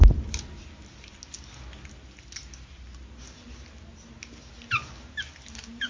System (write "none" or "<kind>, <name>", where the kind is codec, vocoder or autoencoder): none